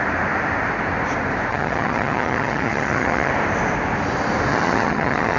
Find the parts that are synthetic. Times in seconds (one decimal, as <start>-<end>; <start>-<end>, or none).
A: 1.5-3.3; 4.5-5.4